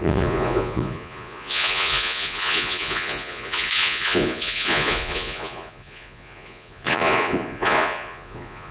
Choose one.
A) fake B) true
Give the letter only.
A